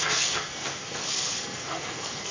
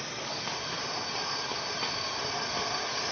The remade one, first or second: first